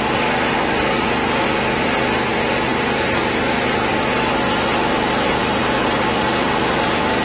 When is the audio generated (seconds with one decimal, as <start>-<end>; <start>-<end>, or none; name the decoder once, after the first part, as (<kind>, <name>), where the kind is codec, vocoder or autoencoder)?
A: none